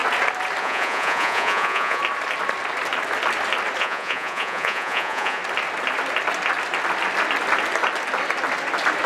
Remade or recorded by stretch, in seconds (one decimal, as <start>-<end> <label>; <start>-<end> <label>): 0.0-0.6 recorded; 0.6-2.0 remade; 2.0-3.8 recorded; 3.8-5.4 remade; 5.4-9.1 recorded